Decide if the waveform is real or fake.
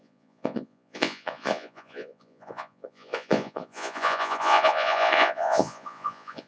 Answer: fake